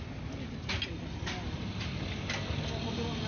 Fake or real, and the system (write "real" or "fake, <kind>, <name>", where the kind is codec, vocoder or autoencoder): real